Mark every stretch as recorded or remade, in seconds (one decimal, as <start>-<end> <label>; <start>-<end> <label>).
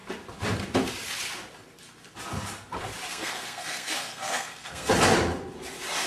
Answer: 0.0-3.1 recorded; 3.1-4.9 remade; 4.9-6.1 recorded